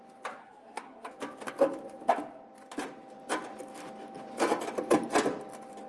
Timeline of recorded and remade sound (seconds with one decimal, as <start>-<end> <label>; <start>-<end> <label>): 0.0-0.4 recorded; 0.4-1.1 remade; 1.1-5.9 recorded